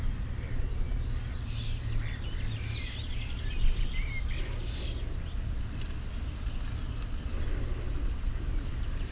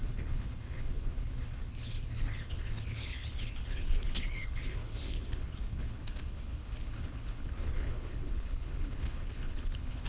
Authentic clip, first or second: first